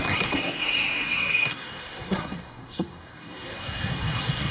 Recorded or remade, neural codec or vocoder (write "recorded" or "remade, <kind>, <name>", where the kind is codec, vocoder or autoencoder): remade, codec, SNAC